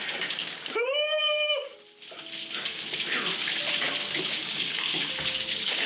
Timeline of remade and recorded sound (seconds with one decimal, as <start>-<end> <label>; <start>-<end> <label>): 0.0-1.7 remade; 1.7-4.0 recorded; 4.0-5.9 remade